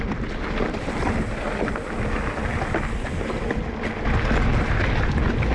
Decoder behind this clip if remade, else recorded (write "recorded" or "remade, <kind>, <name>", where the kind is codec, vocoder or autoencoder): recorded